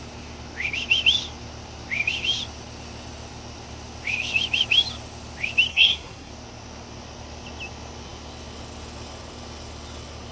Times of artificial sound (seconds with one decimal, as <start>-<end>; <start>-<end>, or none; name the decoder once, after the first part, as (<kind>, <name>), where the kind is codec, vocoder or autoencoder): 5.7-6.3 (codec, SNAC)